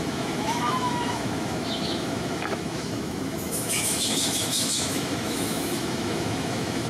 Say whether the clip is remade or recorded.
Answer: remade